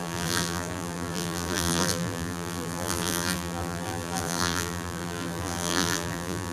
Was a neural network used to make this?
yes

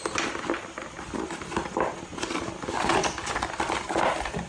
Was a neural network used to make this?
no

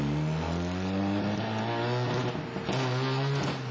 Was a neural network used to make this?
no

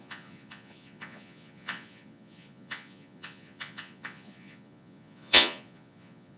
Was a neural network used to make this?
yes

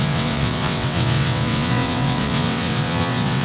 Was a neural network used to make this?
yes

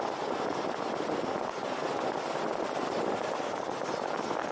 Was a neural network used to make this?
no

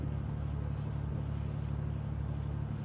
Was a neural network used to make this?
no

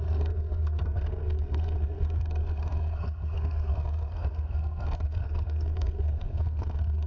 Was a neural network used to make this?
yes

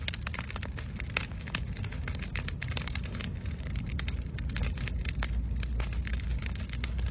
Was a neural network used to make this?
no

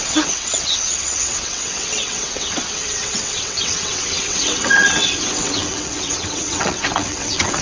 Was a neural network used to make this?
yes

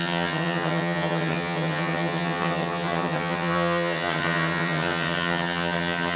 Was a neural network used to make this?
yes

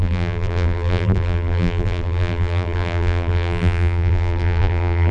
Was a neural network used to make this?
yes